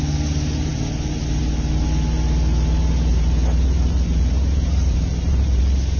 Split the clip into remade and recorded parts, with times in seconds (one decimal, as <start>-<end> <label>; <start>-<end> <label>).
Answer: 0.0-3.1 recorded; 3.1-5.6 remade; 5.6-6.0 recorded